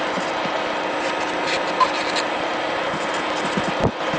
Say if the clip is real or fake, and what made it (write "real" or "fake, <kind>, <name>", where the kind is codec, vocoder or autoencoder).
real